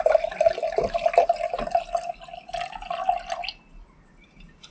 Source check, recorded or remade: recorded